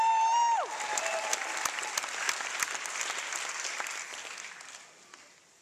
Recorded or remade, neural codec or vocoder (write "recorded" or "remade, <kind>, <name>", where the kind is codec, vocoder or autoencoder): recorded